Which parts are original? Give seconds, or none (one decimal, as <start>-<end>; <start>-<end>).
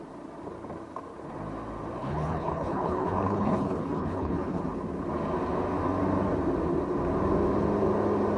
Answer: 0.0-2.0; 4.6-8.4